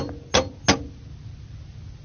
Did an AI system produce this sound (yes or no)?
no